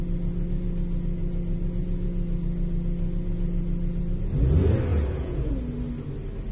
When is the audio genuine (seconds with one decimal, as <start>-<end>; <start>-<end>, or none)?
0.0-4.9; 5.5-6.5